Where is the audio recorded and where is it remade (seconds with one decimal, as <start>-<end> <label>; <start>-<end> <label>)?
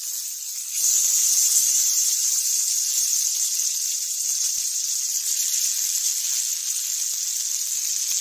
0.0-1.6 recorded; 1.6-5.3 remade; 5.3-8.2 recorded